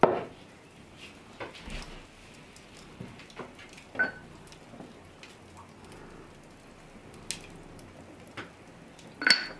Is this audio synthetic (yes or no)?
no